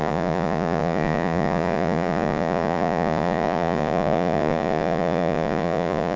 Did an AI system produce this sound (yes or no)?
yes